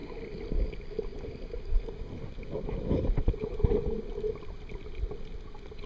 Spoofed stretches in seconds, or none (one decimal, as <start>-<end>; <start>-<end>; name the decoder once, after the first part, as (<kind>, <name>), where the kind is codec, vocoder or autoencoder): none